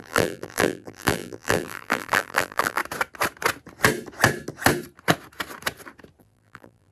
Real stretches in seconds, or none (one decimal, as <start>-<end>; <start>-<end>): 2.8-6.2